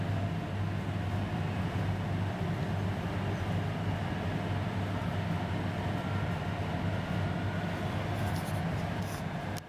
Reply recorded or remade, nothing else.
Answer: recorded